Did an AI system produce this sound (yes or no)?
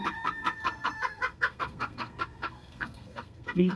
yes